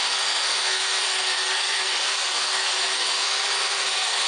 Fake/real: fake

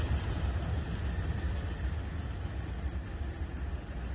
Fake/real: real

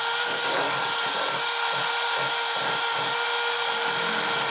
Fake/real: real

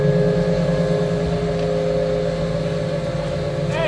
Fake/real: real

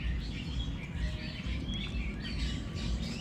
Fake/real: real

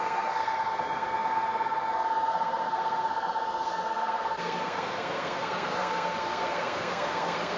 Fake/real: fake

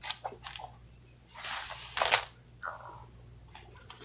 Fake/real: real